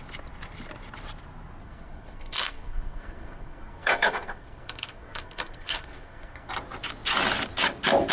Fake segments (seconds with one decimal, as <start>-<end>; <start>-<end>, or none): 1.6-6.5